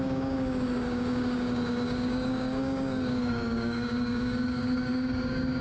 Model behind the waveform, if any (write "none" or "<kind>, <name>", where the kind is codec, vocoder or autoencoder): codec, DAC